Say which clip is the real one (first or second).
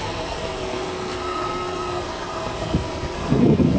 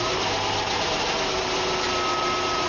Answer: second